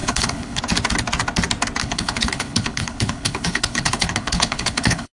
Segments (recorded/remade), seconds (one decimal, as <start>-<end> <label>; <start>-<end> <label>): 0.0-0.6 remade; 0.6-1.8 recorded; 1.8-5.1 remade